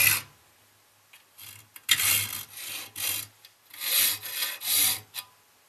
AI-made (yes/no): no